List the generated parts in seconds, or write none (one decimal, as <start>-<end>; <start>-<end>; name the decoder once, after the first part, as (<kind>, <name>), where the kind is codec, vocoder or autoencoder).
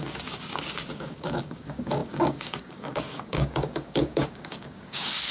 0.0-5.3 (codec, DAC)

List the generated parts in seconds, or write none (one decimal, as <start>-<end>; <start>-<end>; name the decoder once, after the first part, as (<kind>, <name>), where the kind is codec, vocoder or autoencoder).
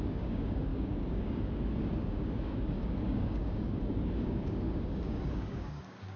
0.0-6.2 (codec, DAC)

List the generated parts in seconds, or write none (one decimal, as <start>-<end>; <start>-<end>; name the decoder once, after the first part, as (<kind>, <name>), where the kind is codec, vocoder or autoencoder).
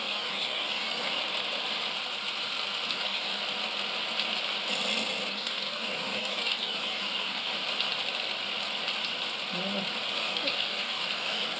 0.0-1.2 (codec, DAC); 2.9-3.4; 5.3-7.5; 10.1-11.6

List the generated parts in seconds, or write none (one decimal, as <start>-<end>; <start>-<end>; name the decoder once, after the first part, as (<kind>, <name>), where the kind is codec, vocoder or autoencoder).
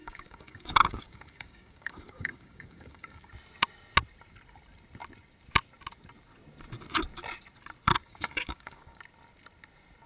0.0-3.3 (codec, DAC); 8.0-9.0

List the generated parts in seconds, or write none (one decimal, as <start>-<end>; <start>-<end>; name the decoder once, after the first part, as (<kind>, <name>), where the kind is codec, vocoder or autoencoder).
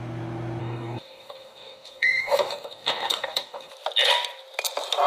0.6-3.7 (codec, DAC)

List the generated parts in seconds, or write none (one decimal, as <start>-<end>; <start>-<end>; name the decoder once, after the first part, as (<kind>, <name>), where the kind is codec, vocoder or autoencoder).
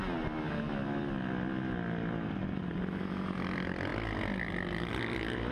none